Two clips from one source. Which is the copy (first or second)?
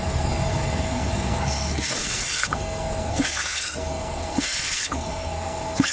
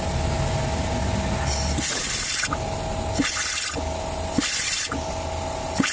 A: first